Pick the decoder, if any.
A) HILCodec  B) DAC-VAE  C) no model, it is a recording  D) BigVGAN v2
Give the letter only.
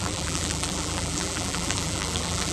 D